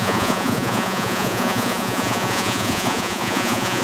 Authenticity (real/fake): fake